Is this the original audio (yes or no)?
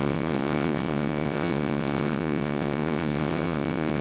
no